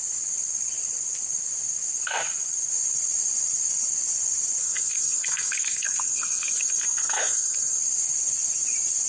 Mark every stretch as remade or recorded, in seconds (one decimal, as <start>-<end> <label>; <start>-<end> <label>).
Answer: 0.0-4.6 recorded; 4.6-7.8 remade; 7.8-9.1 recorded